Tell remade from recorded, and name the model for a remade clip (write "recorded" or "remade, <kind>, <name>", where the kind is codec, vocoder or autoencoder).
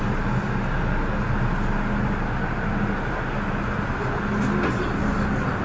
recorded